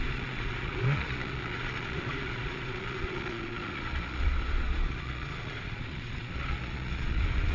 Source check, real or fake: fake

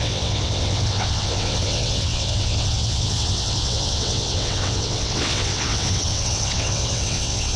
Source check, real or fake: fake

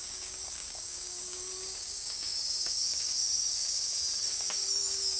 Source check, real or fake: fake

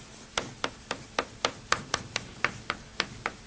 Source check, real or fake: real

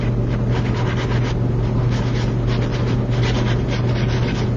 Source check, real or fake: real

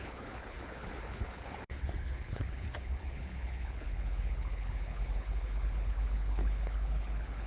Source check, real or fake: fake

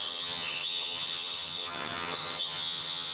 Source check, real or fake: fake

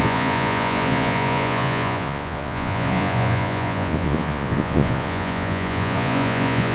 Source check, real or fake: fake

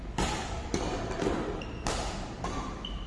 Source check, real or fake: real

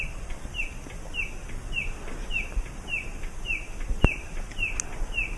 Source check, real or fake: real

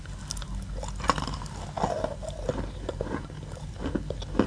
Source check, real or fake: real